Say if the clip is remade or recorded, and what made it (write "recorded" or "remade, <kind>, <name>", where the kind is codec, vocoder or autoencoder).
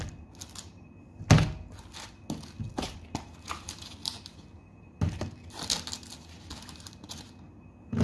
recorded